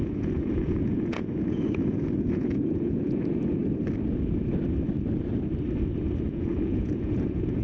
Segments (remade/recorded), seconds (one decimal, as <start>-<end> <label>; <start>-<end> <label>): 0.0-3.6 remade; 3.6-6.3 recorded; 6.3-7.6 remade